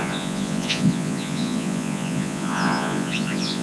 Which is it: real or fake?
fake